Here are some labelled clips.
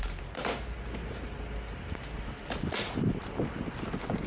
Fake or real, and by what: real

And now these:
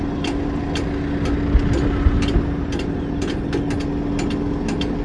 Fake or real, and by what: real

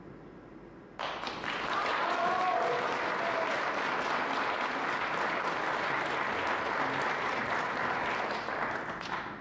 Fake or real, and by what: real